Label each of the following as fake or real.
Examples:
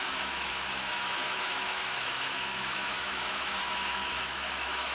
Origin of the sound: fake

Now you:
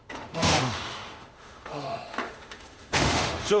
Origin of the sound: fake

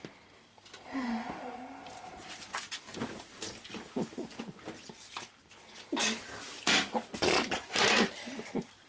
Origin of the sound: real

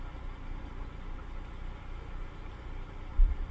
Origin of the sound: real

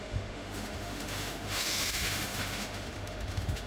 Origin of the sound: fake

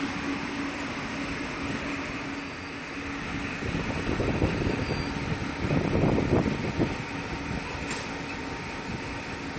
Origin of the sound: real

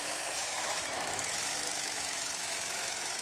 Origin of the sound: fake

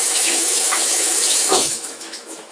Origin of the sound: fake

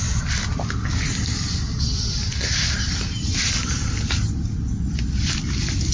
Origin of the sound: real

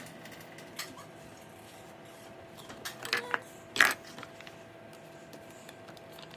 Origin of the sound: real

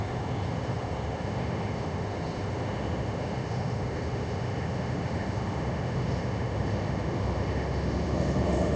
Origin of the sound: fake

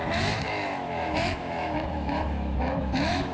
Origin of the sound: fake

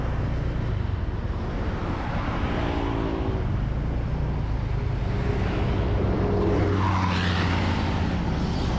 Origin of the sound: real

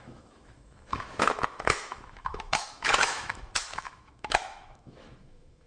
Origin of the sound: fake